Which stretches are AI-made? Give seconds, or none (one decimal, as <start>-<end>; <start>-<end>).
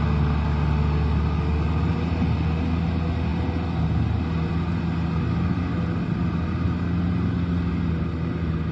none